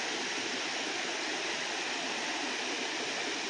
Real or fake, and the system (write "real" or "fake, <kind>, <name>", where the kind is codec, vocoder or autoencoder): real